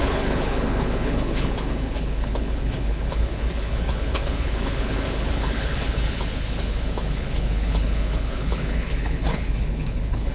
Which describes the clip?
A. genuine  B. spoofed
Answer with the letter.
B